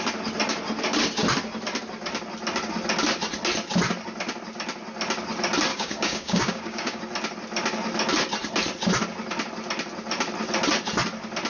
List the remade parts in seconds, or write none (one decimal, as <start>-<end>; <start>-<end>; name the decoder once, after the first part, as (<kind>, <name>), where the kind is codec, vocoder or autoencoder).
5.7-7.0 (codec, DAC)